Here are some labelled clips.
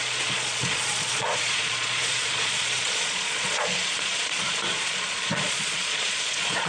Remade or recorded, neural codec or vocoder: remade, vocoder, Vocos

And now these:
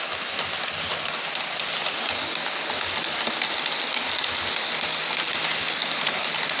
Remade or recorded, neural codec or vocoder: recorded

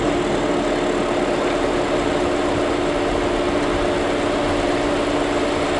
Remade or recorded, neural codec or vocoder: recorded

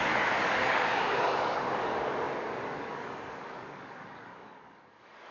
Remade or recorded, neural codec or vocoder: remade, codec, DAC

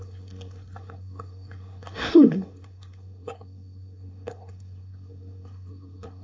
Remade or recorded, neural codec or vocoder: remade, codec, SNAC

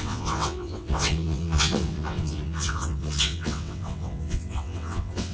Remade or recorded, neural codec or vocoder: remade, vocoder, WaveNeXt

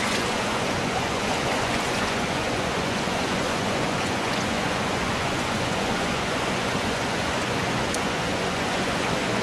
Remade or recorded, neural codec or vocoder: remade, vocoder, Vocos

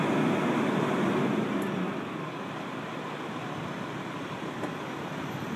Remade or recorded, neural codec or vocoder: recorded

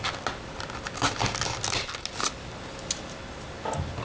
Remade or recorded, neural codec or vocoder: recorded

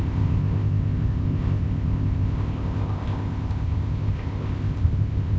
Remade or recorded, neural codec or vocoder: remade, codec, ZipCodec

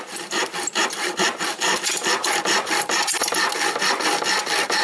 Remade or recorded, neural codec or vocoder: recorded